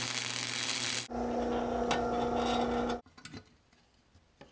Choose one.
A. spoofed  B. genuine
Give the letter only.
B